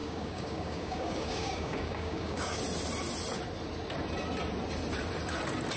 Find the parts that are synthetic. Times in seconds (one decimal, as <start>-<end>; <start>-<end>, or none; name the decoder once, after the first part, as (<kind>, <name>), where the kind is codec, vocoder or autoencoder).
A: 0.0-2.6 (codec, DAC)